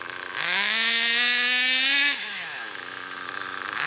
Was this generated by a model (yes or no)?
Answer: yes